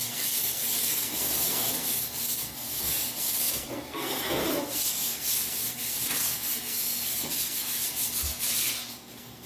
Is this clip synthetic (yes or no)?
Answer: yes